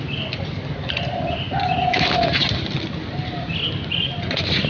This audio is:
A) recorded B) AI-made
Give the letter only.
A